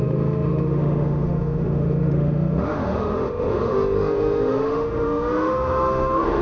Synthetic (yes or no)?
yes